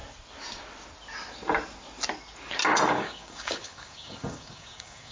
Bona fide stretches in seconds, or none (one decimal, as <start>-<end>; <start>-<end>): 0.0-2.9